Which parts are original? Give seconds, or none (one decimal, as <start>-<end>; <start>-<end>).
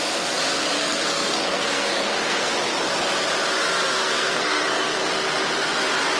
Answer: 0.0-0.8; 2.5-4.0; 5.1-6.2